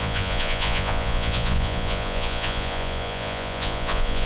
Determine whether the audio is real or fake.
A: fake